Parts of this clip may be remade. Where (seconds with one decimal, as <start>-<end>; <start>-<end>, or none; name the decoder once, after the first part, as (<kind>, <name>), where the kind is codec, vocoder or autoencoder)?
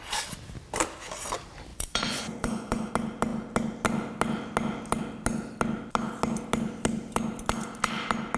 1.7-2.9 (vocoder, Vocos)